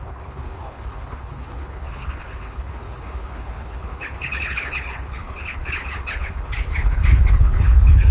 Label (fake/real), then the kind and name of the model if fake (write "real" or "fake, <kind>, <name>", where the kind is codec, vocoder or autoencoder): fake, codec, HILCodec